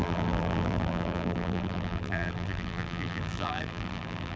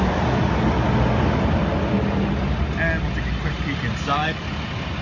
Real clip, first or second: second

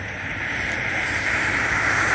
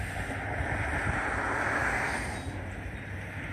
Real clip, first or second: second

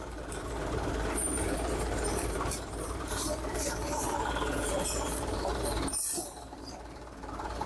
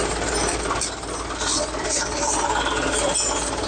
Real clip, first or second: second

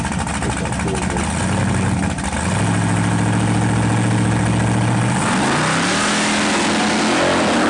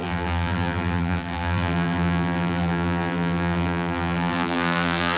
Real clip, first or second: first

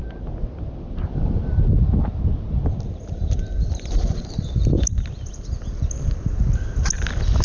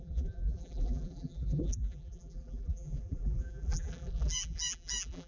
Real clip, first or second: first